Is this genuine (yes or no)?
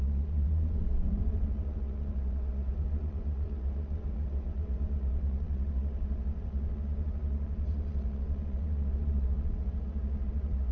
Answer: no